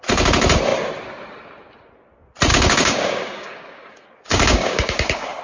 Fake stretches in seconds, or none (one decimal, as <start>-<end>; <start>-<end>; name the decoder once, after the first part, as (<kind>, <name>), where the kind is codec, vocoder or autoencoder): 2.5-5.4 (codec, DAC)